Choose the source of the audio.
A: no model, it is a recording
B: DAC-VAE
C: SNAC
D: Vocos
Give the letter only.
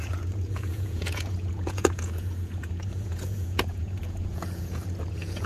D